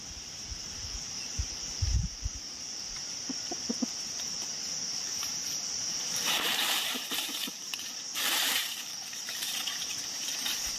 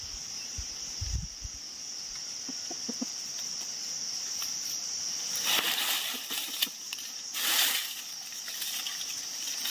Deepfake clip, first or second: first